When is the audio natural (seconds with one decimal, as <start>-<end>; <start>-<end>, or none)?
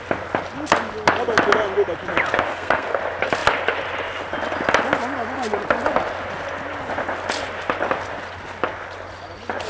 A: 0.0-2.5; 3.0-9.7